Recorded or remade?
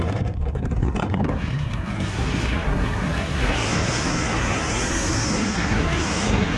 remade